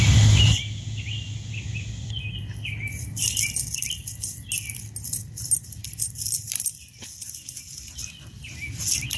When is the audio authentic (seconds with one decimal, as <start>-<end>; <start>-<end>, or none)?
0.0-9.2